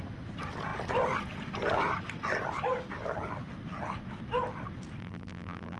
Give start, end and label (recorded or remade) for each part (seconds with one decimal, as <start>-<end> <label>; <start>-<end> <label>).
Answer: 0.0-5.0 recorded; 5.0-5.8 remade